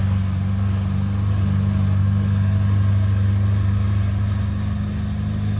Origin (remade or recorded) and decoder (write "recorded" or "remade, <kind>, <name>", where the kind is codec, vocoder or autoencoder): recorded